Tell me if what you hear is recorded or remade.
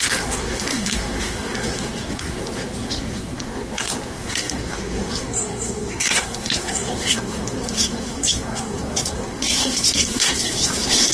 remade